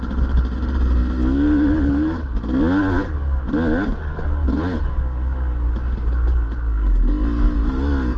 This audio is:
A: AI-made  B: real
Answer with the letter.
B